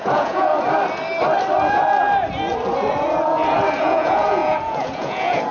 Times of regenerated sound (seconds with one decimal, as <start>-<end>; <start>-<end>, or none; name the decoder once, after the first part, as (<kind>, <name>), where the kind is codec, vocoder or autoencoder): 0.0-0.5 (vocoder, Vocos); 3.8-5.5